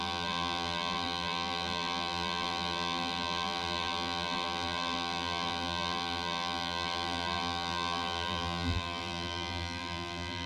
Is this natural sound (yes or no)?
no